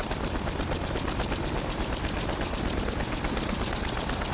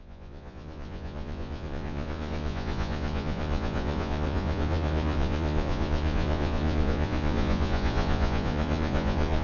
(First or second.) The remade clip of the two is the second